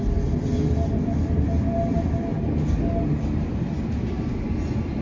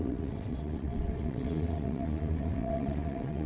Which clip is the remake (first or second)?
second